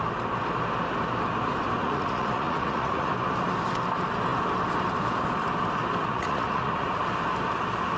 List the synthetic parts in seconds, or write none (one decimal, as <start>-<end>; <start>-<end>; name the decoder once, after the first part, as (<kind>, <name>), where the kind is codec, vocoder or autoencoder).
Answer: 1.8-3.1 (vocoder, Vocos); 6.0-7.0